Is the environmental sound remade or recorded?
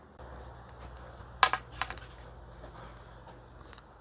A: recorded